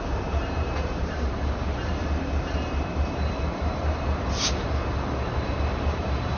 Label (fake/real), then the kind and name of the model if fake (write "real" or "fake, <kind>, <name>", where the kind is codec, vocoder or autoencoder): fake, vocoder, BigVGAN v2